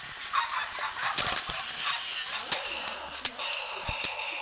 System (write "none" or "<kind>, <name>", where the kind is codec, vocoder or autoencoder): none